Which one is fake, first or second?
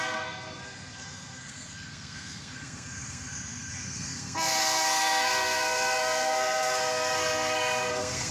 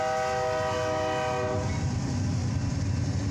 first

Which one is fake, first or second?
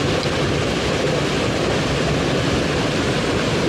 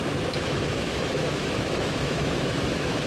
second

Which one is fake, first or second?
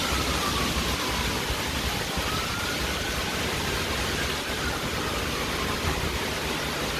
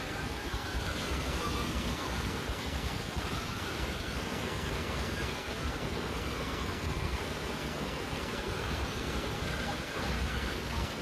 second